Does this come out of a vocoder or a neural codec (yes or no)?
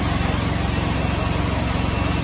no